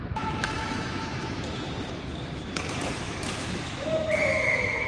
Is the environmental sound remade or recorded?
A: remade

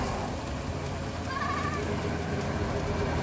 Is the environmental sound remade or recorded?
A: recorded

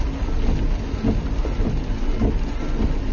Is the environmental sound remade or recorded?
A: recorded